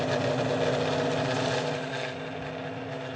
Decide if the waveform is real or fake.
real